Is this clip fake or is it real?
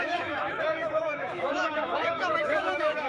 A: fake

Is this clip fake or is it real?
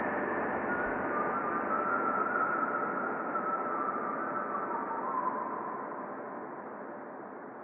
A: real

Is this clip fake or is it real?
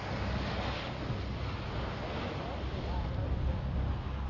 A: real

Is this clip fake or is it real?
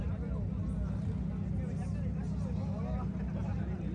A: real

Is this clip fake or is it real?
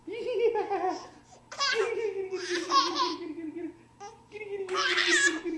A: real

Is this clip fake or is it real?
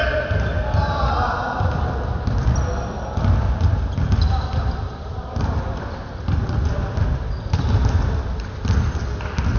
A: real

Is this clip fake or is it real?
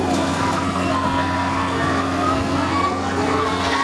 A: fake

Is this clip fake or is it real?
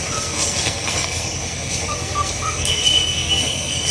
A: fake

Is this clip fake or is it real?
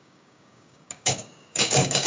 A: fake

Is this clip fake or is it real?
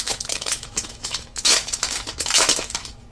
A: fake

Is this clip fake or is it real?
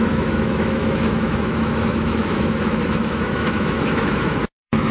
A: fake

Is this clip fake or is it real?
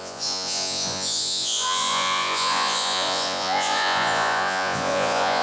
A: fake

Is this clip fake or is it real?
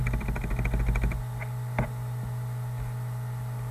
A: real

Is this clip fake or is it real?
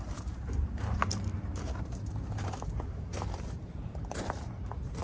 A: fake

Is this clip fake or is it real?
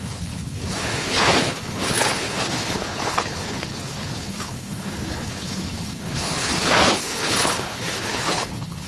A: fake